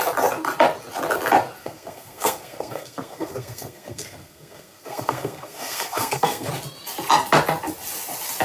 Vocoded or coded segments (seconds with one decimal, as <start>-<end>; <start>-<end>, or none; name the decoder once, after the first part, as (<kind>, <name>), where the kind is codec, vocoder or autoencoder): 1.6-6.5 (codec, SNAC)